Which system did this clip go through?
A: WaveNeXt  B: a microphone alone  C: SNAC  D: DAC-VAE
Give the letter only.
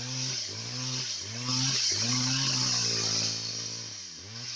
B